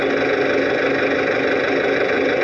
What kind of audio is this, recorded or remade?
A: recorded